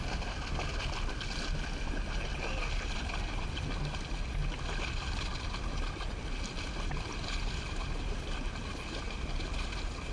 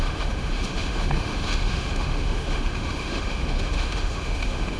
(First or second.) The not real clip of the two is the second